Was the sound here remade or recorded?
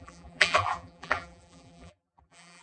remade